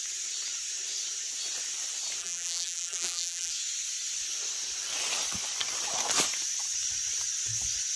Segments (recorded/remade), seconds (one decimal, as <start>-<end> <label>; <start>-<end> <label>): 0.0-2.2 recorded; 2.2-3.5 remade; 3.5-8.0 recorded